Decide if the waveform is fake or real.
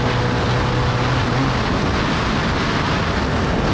real